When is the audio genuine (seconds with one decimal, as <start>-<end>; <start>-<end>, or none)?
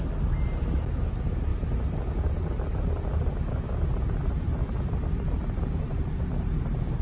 0.0-7.0